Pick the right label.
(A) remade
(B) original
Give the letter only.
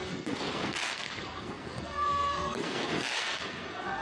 A